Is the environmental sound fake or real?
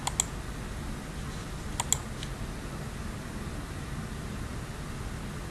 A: real